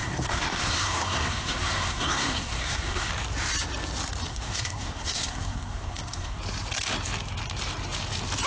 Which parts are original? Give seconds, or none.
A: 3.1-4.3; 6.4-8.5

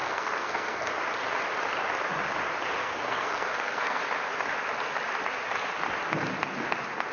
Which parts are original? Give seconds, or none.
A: 0.9-2.8; 4.0-7.1

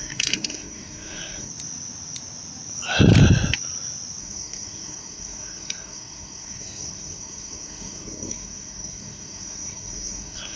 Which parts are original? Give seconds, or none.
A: 1.5-4.2

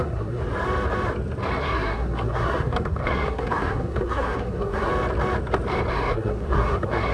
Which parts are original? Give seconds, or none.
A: 0.4-1.6; 4.9-5.9

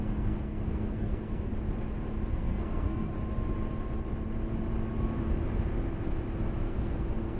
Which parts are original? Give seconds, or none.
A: 1.5-2.3; 3.1-6.6